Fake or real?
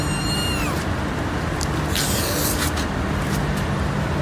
real